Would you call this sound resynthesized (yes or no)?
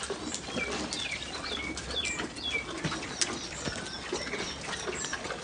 no